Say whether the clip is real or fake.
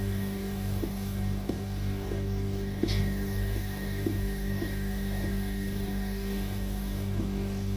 fake